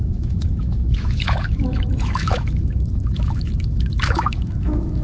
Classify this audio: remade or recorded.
remade